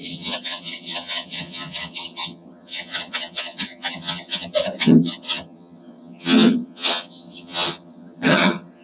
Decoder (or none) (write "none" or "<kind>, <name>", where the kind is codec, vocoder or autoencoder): vocoder, HiFi-GAN